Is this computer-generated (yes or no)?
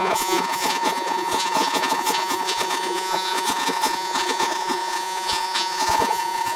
yes